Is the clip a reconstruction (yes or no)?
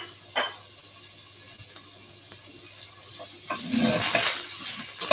no